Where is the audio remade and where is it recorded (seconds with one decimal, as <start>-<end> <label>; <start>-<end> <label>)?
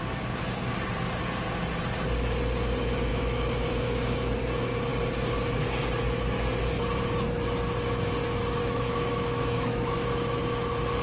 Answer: 0.0-3.1 recorded; 3.1-4.4 remade; 4.4-8.6 recorded; 8.6-10.4 remade; 10.4-11.0 recorded